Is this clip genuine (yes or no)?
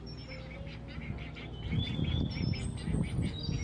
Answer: yes